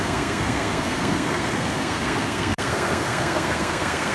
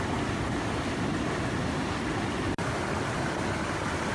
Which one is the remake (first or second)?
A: first